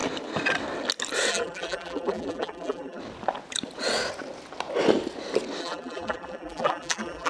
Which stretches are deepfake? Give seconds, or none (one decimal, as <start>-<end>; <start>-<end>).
1.3-3.0; 5.6-7.3